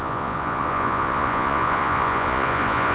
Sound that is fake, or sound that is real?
fake